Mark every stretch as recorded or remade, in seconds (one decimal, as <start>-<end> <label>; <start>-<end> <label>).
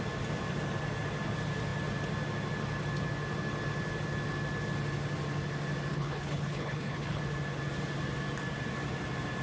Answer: 0.0-5.9 recorded; 5.9-7.2 remade; 7.2-9.4 recorded